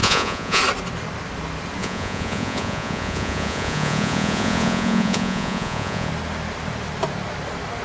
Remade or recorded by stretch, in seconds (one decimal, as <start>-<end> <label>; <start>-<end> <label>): 0.0-0.6 remade; 0.6-1.8 recorded; 1.8-6.1 remade; 6.1-7.8 recorded